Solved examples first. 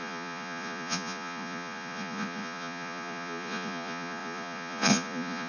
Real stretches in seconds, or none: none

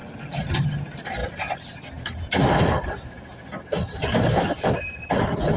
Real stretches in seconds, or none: 0.0-5.6

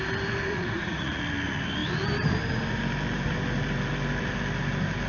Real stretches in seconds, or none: 0.0-0.5; 1.2-5.1

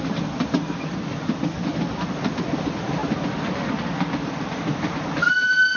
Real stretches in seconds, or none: 0.0-5.8

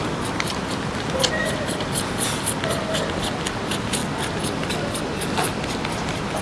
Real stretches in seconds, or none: 0.0-6.4

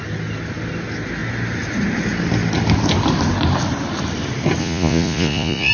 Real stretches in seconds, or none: 0.0-4.6